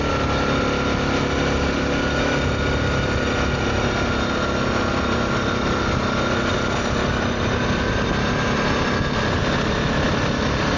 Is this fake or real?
real